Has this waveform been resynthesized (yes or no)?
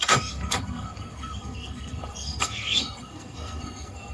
yes